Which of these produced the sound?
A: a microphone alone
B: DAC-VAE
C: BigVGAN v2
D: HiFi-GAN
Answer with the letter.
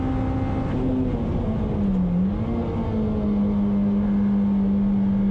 A